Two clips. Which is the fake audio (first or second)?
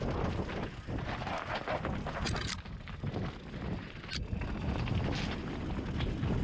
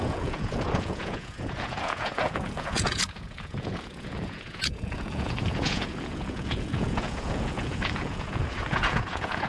second